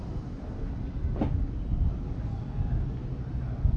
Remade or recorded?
recorded